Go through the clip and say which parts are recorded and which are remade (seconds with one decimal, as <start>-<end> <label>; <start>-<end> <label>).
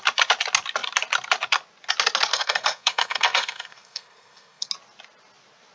0.0-2.3 recorded; 2.3-4.7 remade; 4.7-5.7 recorded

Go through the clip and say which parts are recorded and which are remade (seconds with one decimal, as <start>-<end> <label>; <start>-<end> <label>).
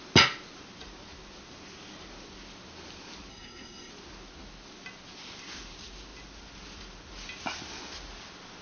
0.0-3.3 recorded; 3.3-3.9 remade; 3.9-8.6 recorded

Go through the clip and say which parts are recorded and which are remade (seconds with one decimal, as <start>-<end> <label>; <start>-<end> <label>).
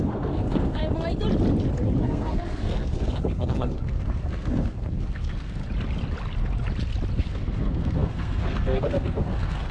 0.0-0.8 remade; 0.8-2.0 recorded; 2.0-5.6 remade; 5.6-7.2 recorded; 7.2-9.7 remade